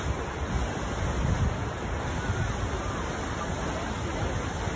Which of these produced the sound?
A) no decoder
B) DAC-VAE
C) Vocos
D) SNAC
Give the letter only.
A